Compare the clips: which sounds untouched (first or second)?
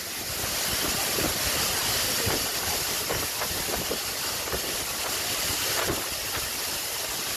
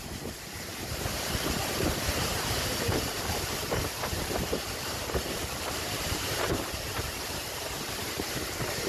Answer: first